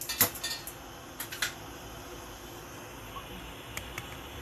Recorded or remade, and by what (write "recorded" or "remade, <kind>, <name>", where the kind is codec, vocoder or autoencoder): recorded